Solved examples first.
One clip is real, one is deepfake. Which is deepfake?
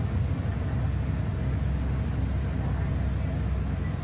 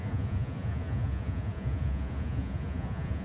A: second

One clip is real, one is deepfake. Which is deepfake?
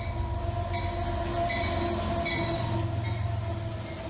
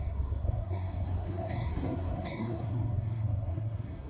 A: second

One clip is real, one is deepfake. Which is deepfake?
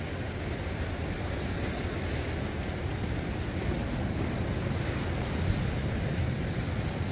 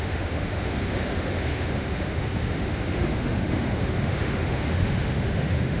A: second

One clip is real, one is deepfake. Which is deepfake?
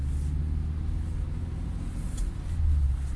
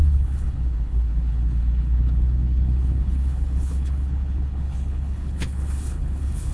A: second